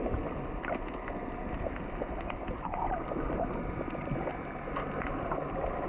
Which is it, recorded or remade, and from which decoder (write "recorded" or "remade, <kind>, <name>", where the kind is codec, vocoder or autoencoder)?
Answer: recorded